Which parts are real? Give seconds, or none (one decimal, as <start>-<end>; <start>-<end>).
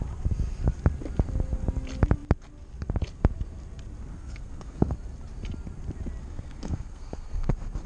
0.0-4.1; 4.9-6.2; 7.5-7.9